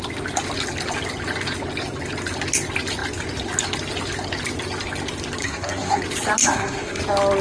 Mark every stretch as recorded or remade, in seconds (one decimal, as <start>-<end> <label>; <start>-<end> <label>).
0.0-5.4 recorded; 5.4-6.0 remade; 6.0-6.4 recorded; 6.4-7.0 remade; 7.0-7.4 recorded